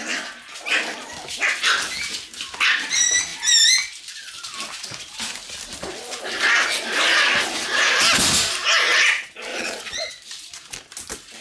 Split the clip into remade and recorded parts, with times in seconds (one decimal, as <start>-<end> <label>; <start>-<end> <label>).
0.0-9.5 recorded; 9.5-10.1 remade; 10.1-11.4 recorded